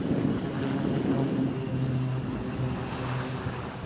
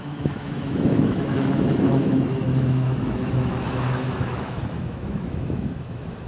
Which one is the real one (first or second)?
first